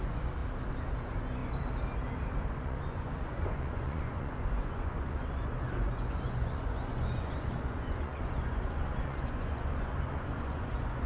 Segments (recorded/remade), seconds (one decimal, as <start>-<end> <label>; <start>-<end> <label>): 0.0-0.4 remade; 0.4-1.0 recorded; 1.0-1.4 remade; 1.4-2.5 recorded; 2.5-11.1 remade